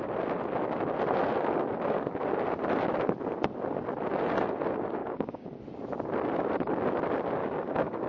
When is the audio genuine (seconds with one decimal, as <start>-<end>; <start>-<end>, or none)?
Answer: 0.0-5.0; 5.6-7.4